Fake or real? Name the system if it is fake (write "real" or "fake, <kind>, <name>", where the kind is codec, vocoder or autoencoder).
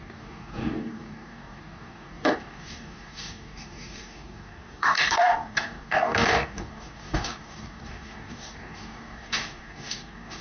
fake, codec, DAC